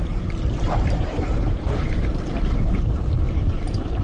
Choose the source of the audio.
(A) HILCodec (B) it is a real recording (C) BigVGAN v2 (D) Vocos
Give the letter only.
C